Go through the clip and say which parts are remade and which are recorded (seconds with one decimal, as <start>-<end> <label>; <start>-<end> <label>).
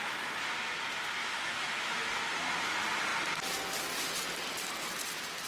0.0-1.2 recorded; 1.2-2.2 remade; 2.2-5.5 recorded